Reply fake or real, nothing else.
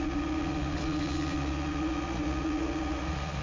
fake